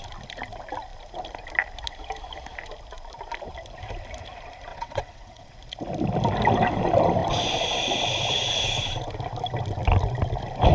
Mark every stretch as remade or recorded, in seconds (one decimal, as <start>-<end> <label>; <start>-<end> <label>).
0.0-4.7 recorded; 4.7-5.5 remade; 5.5-10.7 recorded